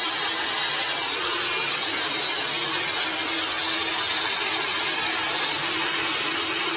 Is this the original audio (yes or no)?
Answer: yes